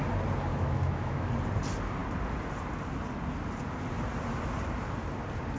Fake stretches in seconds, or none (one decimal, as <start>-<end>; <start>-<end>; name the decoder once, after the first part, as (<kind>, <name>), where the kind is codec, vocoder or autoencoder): 0.5-1.3 (autoencoder, DAC-VAE)